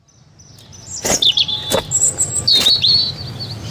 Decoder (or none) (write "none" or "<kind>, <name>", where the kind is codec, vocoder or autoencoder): none